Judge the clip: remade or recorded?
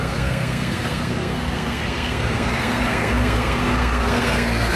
remade